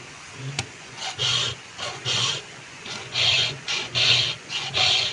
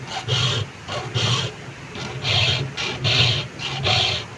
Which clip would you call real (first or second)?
second